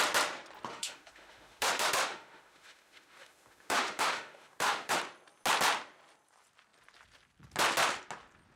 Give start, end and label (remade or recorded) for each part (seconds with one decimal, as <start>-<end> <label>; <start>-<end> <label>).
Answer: 0.0-0.7 recorded; 0.7-5.0 remade; 5.0-8.6 recorded